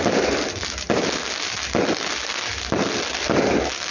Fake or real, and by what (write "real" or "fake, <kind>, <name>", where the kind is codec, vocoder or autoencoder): real